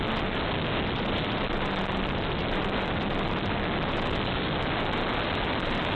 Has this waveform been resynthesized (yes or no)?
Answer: no